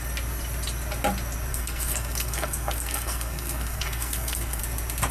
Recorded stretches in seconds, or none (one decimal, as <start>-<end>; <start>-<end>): 0.0-1.5; 4.6-5.1